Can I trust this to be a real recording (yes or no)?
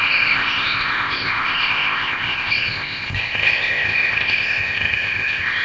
no